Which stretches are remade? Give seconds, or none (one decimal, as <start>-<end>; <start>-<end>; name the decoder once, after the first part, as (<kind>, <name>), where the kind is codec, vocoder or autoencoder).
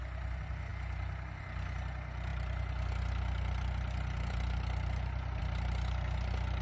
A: none